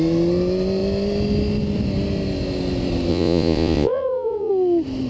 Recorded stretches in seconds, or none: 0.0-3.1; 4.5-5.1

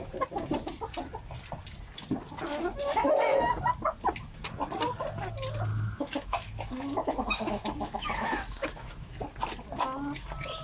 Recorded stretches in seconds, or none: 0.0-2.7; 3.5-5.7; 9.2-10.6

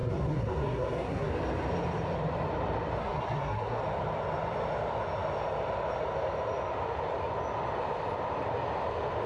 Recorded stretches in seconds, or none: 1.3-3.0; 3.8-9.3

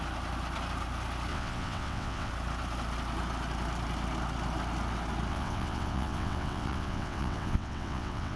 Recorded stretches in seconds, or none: 0.0-1.3; 2.3-5.3

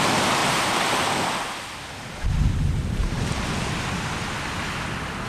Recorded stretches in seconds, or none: 0.0-5.3